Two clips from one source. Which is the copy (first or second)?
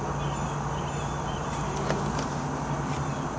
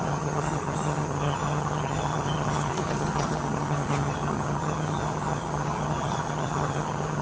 second